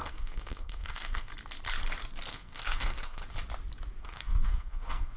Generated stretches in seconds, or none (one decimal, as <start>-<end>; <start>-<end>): 0.0-1.3; 2.3-3.2; 4.0-5.2